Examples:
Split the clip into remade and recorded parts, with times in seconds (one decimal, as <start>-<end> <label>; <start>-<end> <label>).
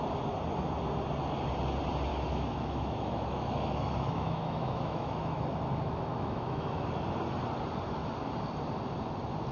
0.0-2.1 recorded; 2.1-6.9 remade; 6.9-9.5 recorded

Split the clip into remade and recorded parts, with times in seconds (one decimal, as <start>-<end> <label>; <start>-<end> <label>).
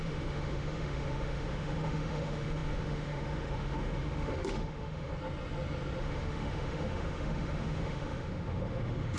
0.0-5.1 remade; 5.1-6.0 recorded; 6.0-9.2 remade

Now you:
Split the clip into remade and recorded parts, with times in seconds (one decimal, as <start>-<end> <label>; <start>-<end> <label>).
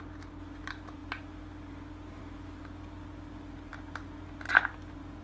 0.0-5.2 recorded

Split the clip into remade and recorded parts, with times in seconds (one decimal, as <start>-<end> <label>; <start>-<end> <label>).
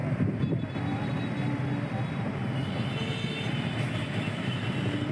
0.0-4.0 recorded; 4.0-4.6 remade; 4.6-5.1 recorded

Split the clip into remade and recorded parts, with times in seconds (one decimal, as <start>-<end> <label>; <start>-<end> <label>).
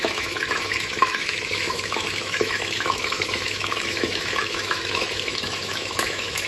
0.0-6.5 remade